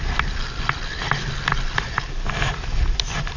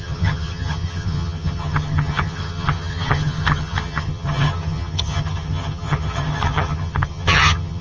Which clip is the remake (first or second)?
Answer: second